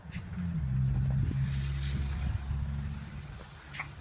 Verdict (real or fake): real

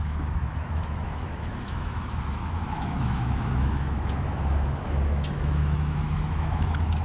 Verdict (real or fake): fake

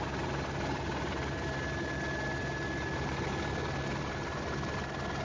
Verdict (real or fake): real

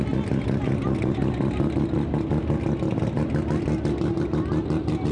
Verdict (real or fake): real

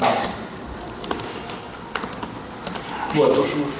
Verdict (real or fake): real